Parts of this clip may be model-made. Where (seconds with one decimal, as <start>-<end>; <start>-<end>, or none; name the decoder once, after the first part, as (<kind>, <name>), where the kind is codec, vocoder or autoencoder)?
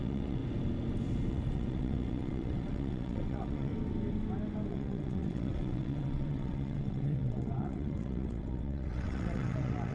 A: 0.0-0.4 (vocoder, WaveNeXt); 1.3-3.7; 4.7-9.9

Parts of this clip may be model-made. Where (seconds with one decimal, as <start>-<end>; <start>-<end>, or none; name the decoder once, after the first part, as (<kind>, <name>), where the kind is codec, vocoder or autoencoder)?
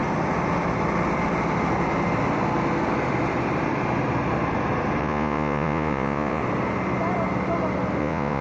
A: 5.0-6.4 (vocoder, Vocos); 8.0-8.4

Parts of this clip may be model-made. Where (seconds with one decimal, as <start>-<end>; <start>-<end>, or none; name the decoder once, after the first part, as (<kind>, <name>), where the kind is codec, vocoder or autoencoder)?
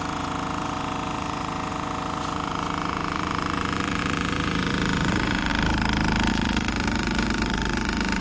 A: 0.0-5.5 (vocoder, Vocos); 6.3-8.2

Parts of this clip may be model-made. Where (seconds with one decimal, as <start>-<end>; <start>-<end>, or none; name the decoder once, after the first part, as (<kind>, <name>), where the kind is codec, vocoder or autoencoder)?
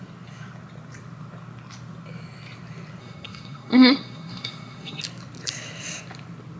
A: 3.0-5.0 (codec, SNAC)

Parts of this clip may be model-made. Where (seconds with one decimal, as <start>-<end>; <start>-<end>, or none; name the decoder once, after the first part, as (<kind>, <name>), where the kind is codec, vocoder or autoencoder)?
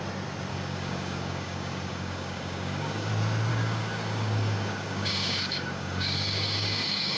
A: 0.5-3.1 (codec, DAC); 3.5-7.2